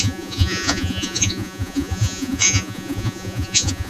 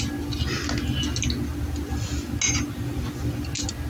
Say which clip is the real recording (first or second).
second